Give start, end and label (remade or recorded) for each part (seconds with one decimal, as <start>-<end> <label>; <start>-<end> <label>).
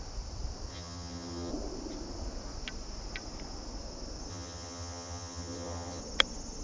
0.0-0.7 recorded; 0.7-1.5 remade; 1.5-4.3 recorded; 4.3-6.0 remade; 6.0-6.6 recorded